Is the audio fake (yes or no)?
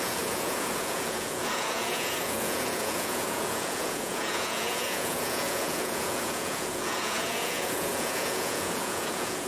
yes